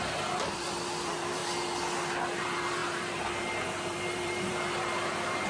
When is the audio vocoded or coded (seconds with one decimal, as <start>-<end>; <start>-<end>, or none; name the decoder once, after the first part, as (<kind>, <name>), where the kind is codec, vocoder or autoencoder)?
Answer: 0.0-1.4 (vocoder, BigVGAN v2); 2.4-5.5